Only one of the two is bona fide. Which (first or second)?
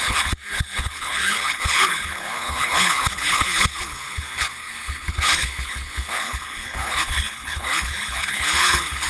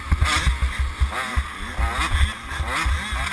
second